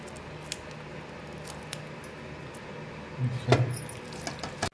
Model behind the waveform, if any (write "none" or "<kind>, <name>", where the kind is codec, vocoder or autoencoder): none